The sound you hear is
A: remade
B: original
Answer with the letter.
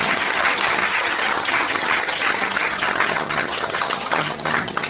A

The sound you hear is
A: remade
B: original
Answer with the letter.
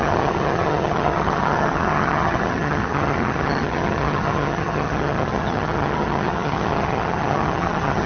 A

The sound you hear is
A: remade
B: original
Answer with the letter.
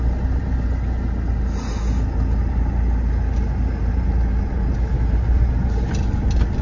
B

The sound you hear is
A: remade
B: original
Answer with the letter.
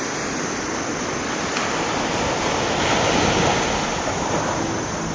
B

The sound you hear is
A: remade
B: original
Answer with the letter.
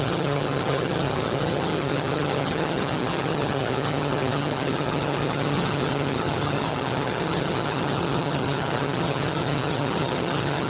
A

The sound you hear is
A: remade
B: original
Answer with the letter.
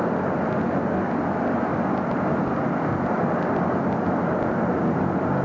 B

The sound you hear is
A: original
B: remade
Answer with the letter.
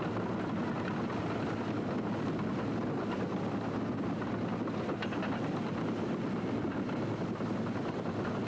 A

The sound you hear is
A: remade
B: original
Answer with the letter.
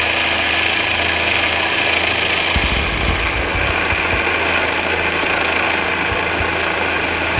B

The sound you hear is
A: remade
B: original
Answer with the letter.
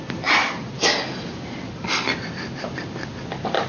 B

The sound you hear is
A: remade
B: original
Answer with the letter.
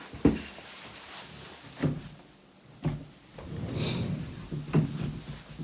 B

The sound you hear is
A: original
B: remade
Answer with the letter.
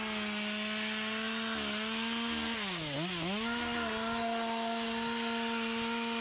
A